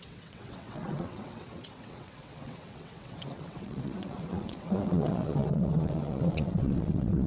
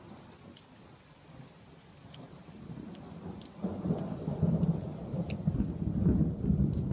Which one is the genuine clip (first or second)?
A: second